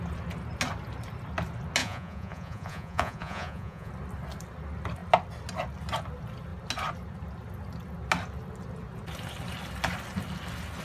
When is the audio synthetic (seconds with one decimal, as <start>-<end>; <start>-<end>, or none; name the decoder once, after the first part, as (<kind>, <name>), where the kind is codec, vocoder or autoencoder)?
1.8-3.9 (vocoder, Vocos)